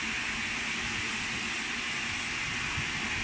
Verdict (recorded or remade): recorded